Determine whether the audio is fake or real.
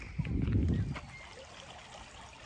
real